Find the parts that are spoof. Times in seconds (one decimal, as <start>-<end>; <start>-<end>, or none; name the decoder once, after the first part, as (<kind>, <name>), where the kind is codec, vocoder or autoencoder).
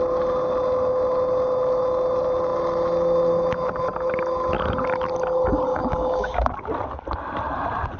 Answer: 5.7-6.7 (codec, DAC)